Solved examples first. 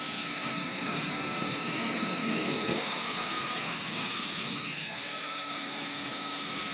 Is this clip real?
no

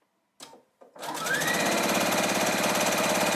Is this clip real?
yes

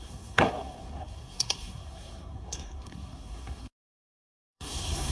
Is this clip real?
no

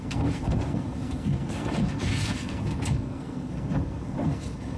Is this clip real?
no